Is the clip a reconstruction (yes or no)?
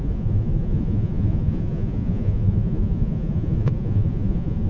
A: yes